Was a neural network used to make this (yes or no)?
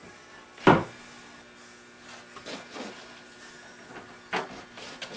no